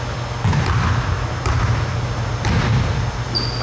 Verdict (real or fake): real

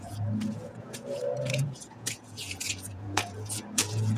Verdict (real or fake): fake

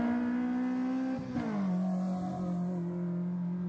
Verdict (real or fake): real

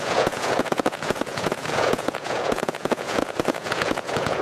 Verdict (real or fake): fake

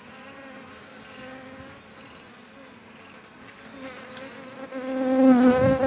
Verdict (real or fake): real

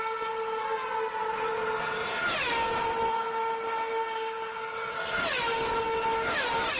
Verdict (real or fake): real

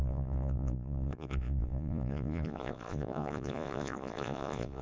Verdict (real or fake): fake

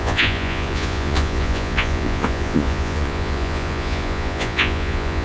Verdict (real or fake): fake